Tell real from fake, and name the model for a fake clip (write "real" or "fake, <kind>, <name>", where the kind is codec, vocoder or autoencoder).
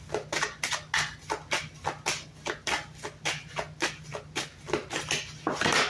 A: real